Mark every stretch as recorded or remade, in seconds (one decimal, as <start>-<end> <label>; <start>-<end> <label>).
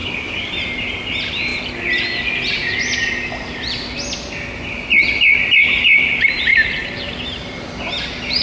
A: 0.0-0.5 remade; 0.5-8.4 recorded